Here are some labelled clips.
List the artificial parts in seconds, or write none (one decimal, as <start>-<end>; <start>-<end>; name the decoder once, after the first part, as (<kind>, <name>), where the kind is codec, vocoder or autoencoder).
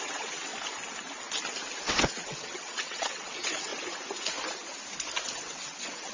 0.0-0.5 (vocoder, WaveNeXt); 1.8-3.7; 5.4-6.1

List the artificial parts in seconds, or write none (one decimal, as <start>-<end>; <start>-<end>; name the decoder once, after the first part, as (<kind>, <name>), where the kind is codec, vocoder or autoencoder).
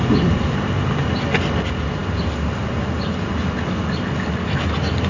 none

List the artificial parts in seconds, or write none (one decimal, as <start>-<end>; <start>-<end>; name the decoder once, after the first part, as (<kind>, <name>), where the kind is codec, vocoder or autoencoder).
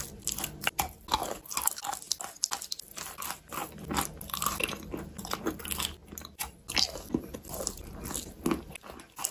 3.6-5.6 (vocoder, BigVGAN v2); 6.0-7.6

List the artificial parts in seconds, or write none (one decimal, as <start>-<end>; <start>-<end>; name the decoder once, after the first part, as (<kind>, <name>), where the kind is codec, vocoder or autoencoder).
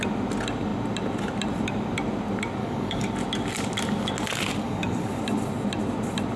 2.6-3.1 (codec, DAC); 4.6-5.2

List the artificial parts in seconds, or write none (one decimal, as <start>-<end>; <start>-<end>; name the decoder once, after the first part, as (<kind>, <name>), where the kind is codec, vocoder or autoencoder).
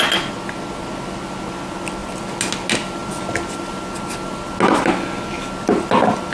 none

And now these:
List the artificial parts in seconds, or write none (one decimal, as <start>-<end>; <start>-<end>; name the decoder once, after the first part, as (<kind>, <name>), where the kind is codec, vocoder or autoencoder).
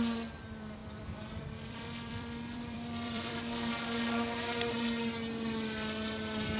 0.8-3.4 (vocoder, BigVGAN v2)